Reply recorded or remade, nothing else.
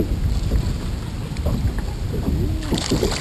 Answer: recorded